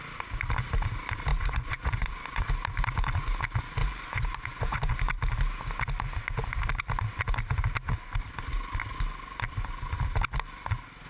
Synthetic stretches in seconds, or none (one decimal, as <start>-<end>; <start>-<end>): 1.3-2.5; 3.8-4.9